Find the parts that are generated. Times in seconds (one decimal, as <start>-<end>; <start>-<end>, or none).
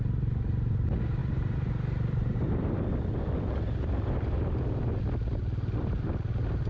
1.2-3.3